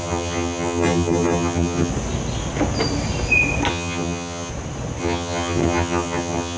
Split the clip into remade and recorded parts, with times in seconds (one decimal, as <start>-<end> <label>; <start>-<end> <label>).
0.0-1.9 remade; 1.9-3.7 recorded; 3.7-4.5 remade; 4.5-5.0 recorded; 5.0-6.6 remade